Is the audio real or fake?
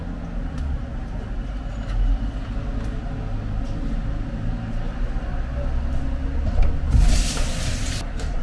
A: real